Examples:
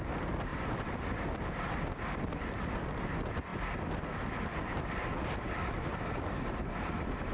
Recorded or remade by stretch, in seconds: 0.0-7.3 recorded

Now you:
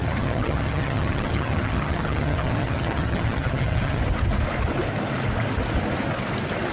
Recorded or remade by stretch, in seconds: 0.0-4.0 remade; 4.0-6.7 recorded